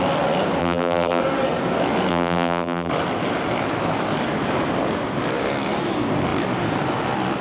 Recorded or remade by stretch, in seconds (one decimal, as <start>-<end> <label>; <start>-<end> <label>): 0.0-0.6 recorded; 0.6-1.2 remade; 1.2-2.1 recorded; 2.1-2.9 remade; 2.9-7.4 recorded